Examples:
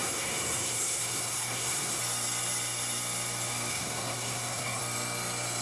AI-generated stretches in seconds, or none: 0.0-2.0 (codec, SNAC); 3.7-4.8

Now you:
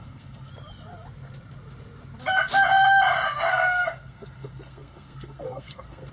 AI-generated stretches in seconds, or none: 0.0-0.5 (codec, SNAC); 3.5-6.1

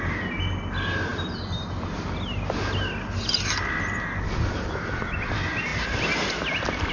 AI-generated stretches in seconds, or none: none